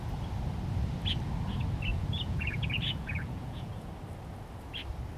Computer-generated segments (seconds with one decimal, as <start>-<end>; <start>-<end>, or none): 1.9-3.9